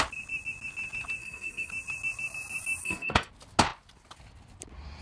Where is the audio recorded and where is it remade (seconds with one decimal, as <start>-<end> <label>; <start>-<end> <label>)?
0.0-1.2 recorded; 1.2-1.7 remade; 1.7-2.8 recorded; 2.8-3.3 remade; 3.3-5.0 recorded